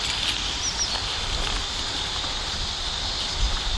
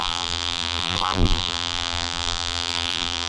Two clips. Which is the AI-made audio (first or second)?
second